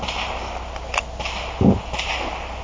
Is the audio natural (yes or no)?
yes